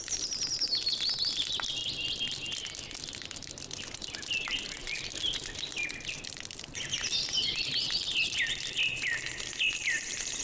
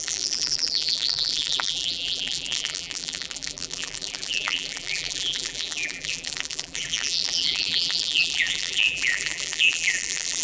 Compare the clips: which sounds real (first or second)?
first